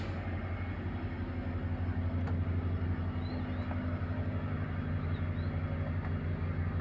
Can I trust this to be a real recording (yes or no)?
yes